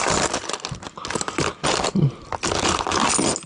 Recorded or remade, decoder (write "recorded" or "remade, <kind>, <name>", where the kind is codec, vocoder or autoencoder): recorded